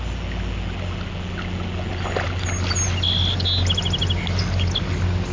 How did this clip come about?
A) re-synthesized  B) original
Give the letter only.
B